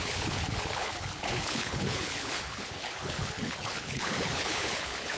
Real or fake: fake